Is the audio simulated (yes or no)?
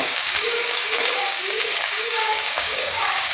yes